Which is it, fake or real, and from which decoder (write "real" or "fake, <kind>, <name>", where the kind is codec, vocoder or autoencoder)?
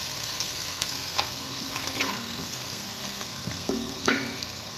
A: fake, codec, SNAC